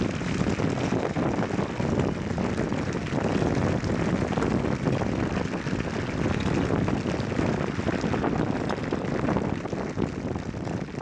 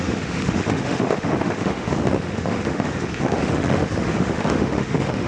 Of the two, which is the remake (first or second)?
second